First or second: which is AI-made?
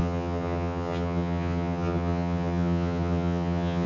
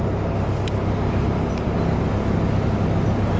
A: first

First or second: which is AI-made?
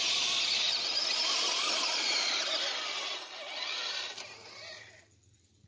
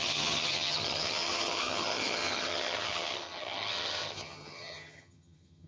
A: second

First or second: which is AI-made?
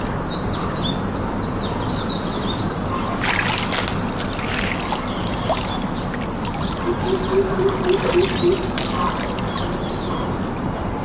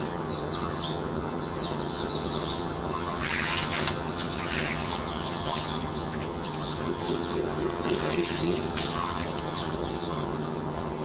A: second